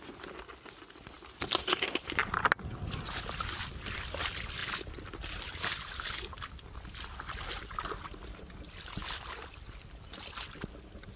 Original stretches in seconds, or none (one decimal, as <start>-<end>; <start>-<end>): 0.0-11.2